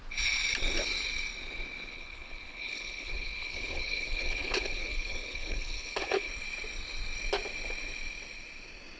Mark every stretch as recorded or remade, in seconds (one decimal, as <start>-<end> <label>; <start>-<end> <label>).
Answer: 0.0-1.9 recorded; 1.9-6.3 remade; 6.3-9.0 recorded